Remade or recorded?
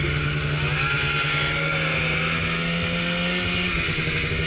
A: recorded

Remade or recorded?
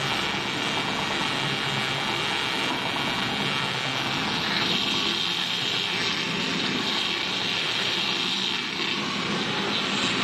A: recorded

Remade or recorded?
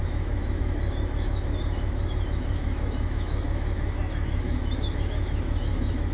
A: remade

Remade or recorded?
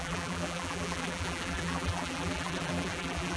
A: remade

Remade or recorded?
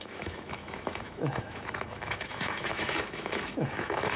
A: remade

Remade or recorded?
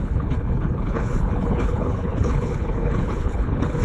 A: remade